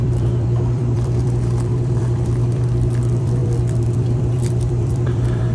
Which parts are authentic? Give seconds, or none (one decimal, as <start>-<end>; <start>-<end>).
none